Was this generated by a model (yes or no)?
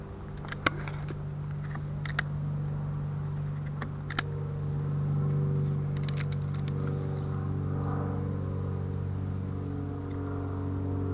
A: no